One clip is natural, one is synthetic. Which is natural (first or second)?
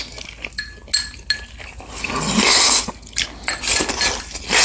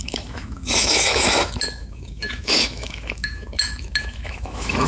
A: first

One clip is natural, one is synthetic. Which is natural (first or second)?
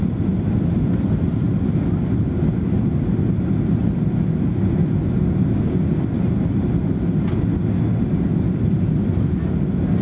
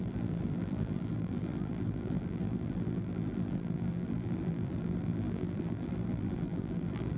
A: first